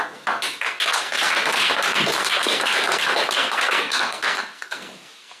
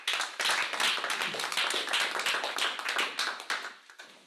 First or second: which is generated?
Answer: first